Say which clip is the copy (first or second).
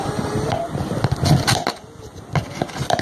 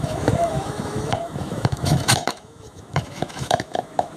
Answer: second